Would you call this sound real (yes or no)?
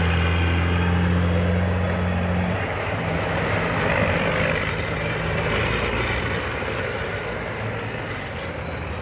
yes